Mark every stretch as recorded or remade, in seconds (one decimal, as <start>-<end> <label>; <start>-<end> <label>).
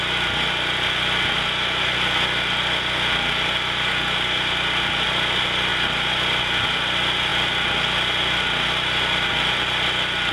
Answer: 0.0-10.3 recorded